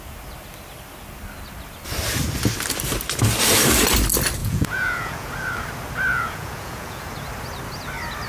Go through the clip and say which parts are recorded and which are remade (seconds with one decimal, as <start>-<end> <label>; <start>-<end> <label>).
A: 0.0-4.4 recorded; 4.4-5.3 remade; 5.3-6.1 recorded; 6.1-7.1 remade; 7.1-8.3 recorded